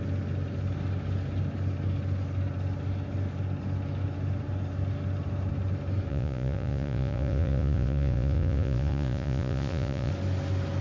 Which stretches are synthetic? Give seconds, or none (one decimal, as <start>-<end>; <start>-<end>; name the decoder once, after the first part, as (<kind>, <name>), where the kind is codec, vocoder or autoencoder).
6.1-10.1 (vocoder, Vocos)